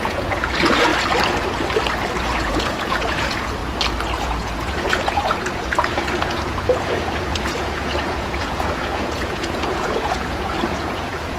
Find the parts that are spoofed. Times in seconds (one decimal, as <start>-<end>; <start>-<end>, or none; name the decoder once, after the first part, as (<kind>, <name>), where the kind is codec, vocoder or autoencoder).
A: 0.0-0.9 (vocoder, Vocos); 2.2-3.6; 4.2-11.4